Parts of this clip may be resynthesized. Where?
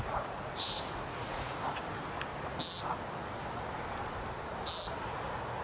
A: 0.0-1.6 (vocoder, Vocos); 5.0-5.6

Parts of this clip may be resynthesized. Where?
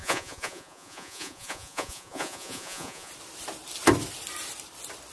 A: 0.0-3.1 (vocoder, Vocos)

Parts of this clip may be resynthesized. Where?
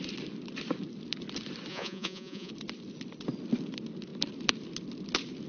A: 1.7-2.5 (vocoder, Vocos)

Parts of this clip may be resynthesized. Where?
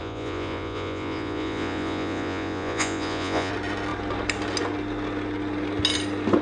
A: 0.0-3.5 (vocoder, Vocos)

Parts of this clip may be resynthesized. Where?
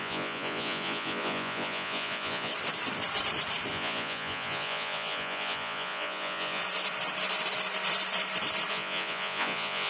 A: 0.0-2.5 (vocoder, Vocos); 3.7-6.6; 8.7-9.9